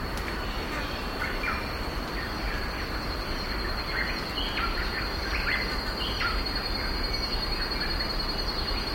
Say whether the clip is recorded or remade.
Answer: recorded